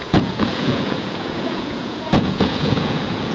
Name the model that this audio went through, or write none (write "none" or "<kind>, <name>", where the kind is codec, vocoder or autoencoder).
vocoder, Vocos